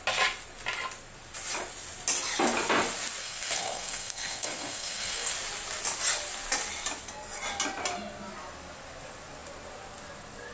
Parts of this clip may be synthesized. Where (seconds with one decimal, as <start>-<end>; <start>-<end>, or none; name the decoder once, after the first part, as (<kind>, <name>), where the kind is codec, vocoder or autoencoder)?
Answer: 3.2-5.3 (codec, SNAC)